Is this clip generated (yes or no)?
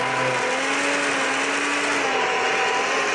no